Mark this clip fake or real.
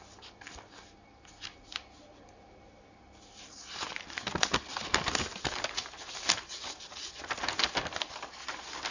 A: real